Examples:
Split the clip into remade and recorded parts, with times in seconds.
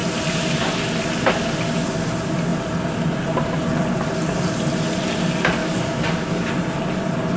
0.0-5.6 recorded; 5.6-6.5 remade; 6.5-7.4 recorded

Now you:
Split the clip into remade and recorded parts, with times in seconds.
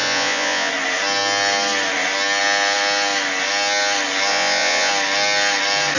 0.0-0.7 remade; 0.7-4.3 recorded; 4.3-4.9 remade; 4.9-6.0 recorded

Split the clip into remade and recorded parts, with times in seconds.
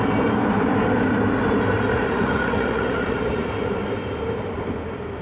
0.0-1.9 recorded; 1.9-3.5 remade; 3.5-5.2 recorded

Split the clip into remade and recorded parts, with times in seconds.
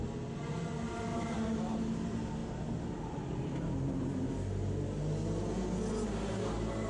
0.0-1.1 recorded; 1.1-1.8 remade; 1.8-6.9 recorded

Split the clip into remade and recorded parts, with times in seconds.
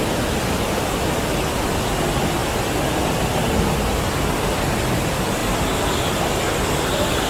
0.0-7.3 recorded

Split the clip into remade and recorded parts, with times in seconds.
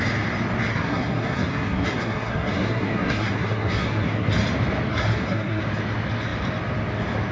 0.0-0.7 recorded; 0.7-4.3 remade; 4.3-4.9 recorded; 4.9-5.6 remade; 5.6-7.3 recorded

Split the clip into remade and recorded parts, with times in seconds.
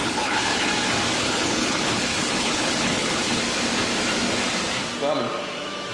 0.0-0.7 remade; 0.7-1.2 recorded; 1.2-3.4 remade; 3.4-5.9 recorded